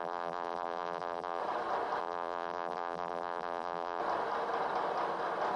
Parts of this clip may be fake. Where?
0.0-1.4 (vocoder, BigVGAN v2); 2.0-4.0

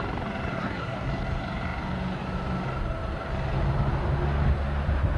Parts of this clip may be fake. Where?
0.5-1.1 (codec, SNAC)

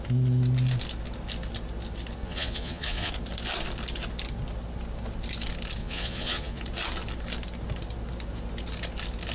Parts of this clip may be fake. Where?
2.2-3.1 (vocoder, Vocos); 5.8-6.6